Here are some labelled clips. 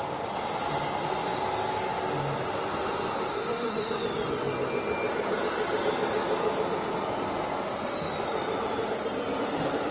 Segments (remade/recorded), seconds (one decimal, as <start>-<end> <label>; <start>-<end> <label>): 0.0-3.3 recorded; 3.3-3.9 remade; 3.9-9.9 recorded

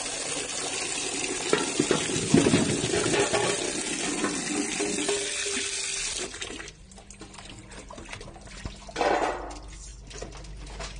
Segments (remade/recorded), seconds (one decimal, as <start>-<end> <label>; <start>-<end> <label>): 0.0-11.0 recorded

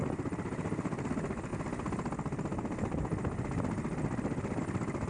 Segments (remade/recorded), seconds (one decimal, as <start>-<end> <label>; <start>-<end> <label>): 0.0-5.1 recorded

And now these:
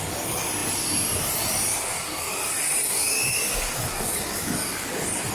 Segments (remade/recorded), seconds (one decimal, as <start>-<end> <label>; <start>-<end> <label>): 0.0-1.7 recorded; 1.7-5.3 remade